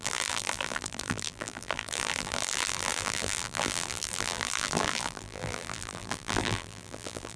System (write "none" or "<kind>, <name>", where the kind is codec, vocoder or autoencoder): vocoder, BigVGAN v2